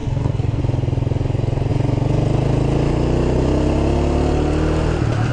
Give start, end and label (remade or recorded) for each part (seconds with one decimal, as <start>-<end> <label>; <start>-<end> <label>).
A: 0.0-0.6 remade; 0.6-5.3 recorded